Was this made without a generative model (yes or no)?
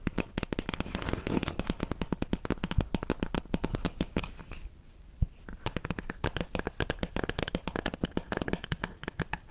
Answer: yes